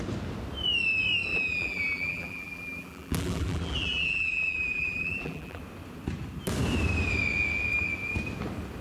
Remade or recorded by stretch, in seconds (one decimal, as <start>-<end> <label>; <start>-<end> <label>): 0.0-1.3 recorded; 1.3-5.6 remade; 5.6-8.8 recorded